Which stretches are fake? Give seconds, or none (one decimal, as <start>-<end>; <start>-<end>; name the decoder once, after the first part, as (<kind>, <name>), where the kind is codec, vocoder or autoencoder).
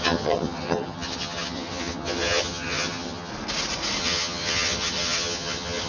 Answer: 0.0-3.3 (vocoder, HiFi-GAN); 4.0-5.9